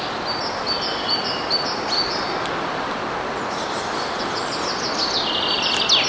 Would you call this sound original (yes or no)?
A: yes